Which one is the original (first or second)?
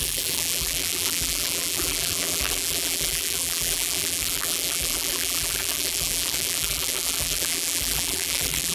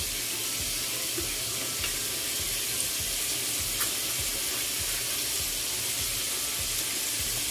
second